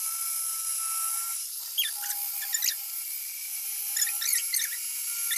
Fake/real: real